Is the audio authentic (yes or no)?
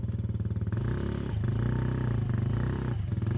yes